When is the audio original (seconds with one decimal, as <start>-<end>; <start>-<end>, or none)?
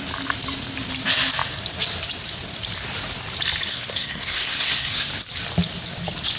0.0-3.7; 5.1-6.4